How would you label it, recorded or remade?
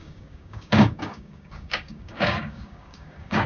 remade